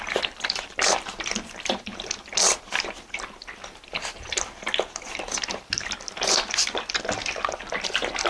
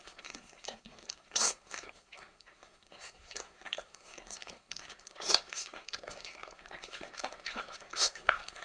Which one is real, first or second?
first